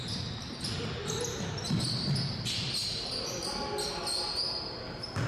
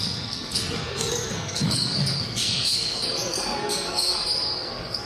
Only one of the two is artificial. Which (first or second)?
second